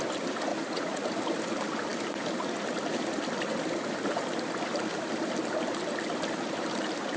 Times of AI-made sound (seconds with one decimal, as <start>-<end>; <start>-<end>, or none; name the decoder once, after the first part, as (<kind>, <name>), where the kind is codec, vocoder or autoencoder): 0.5-1.1 (vocoder, Vocos)